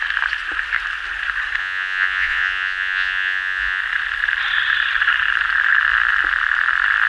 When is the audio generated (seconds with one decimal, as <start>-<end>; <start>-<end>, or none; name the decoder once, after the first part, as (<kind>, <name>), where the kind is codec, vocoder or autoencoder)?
1.6-3.8 (vocoder, Vocos)